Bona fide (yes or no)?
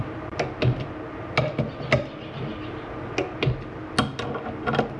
yes